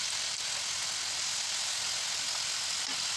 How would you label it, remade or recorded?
recorded